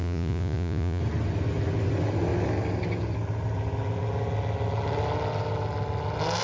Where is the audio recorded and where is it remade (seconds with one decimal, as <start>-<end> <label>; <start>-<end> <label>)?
0.0-1.0 remade; 1.0-6.4 recorded